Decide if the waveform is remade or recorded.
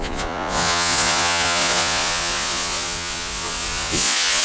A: remade